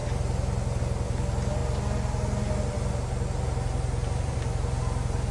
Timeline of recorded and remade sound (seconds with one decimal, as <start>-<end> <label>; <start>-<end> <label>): 0.0-5.3 recorded